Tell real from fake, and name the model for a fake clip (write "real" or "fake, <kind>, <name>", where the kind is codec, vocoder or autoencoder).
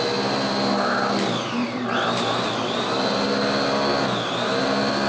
real